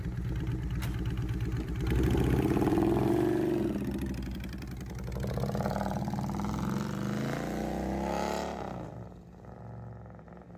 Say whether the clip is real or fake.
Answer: real